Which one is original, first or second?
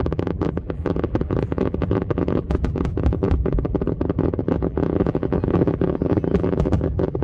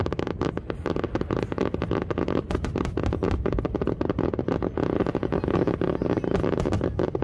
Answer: second